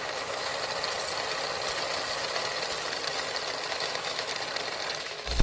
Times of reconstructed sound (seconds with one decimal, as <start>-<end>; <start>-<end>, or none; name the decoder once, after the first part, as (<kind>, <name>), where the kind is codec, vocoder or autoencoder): 0.0-0.5 (autoencoder, DAC-VAE); 3.7-4.3; 5.0-5.4